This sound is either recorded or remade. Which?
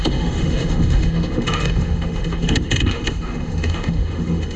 remade